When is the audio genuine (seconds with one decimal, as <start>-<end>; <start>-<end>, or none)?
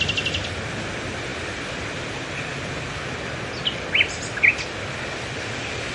0.0-5.9